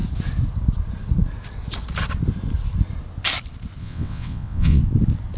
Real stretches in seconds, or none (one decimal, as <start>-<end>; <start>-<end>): 0.0-3.8; 4.8-5.4